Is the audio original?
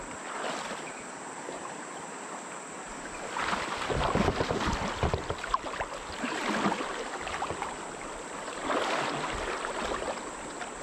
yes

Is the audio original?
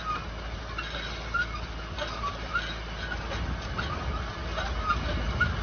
yes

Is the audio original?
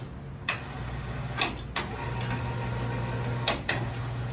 yes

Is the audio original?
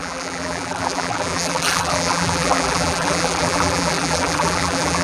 no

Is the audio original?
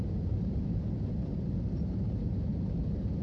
no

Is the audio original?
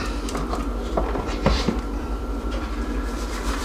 no